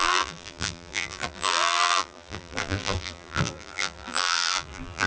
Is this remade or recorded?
remade